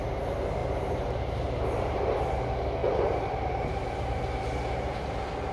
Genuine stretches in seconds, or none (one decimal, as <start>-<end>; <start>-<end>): 0.0-0.6; 2.0-2.8; 3.9-5.5